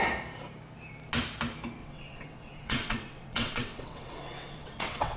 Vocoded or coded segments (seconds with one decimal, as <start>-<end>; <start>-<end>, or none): 1.8-5.2